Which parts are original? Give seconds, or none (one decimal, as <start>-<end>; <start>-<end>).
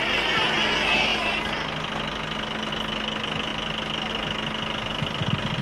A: 0.0-5.6